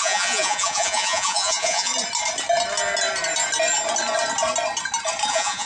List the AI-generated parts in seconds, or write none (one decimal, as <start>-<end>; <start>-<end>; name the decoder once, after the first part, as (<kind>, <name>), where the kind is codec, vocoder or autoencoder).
0.0-1.9 (vocoder, Vocos); 5.3-5.7